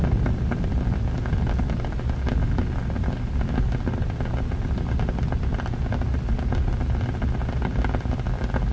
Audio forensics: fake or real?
real